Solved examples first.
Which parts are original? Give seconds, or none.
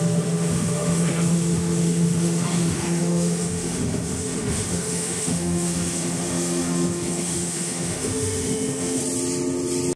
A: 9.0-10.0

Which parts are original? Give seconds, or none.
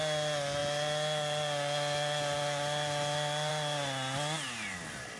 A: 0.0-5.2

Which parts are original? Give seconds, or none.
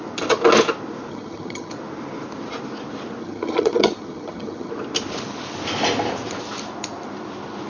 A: 0.0-1.1; 1.7-3.2; 4.7-7.7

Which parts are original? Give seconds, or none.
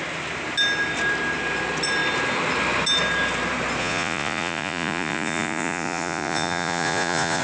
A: 0.0-3.8